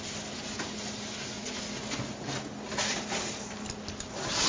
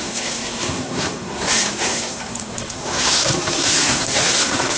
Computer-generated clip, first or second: second